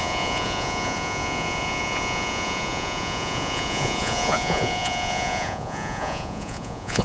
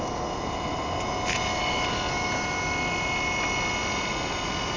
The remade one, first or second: first